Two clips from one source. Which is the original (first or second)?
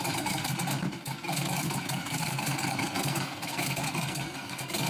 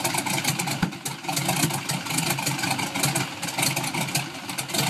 second